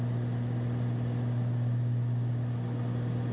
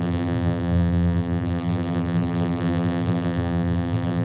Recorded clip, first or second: first